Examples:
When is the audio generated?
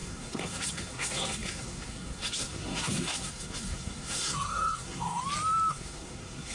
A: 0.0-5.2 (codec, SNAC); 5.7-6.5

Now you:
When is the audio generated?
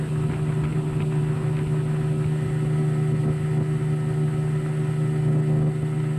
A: none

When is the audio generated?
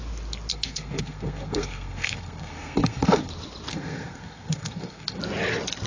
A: 0.5-3.3 (codec, SNAC); 3.7-5.2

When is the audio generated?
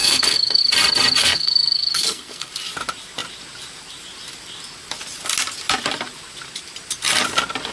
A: 0.0-0.6 (codec, SNAC); 1.2-2.5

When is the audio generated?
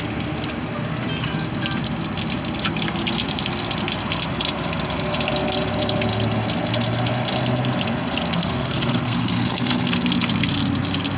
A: 8.3-9.9 (codec, SNAC)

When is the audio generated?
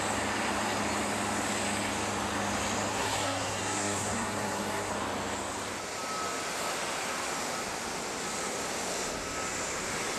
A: 2.9-4.9 (codec, SNAC)